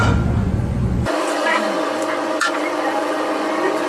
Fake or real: fake